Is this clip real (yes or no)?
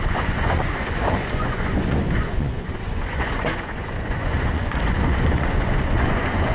no